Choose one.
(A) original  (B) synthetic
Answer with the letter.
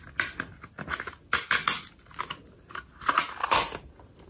A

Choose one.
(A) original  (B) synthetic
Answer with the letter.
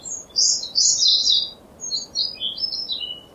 A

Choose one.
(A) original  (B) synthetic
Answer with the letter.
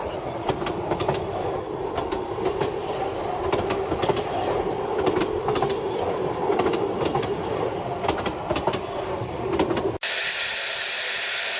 A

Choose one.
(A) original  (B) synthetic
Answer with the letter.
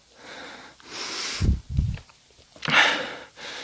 A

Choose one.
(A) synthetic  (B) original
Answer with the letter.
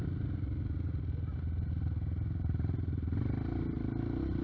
B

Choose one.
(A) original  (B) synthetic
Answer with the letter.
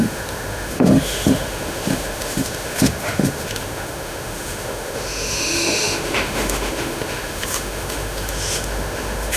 B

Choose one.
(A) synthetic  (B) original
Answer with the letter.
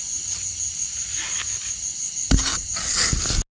B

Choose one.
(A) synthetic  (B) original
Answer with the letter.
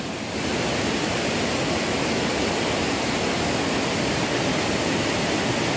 B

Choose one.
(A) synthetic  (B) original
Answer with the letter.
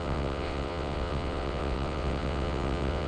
A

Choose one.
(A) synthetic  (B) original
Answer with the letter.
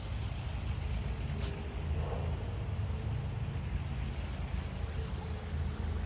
B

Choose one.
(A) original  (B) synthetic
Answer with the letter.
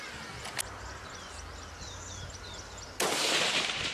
A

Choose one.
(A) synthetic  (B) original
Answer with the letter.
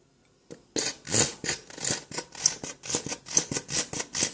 B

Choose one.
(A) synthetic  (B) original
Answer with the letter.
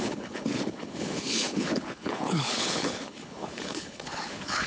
A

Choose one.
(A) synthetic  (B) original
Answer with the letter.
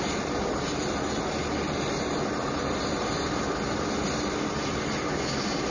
B